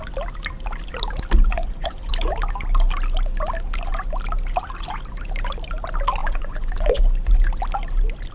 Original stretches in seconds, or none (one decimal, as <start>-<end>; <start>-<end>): 0.0-1.5; 2.1-6.2; 7.0-8.3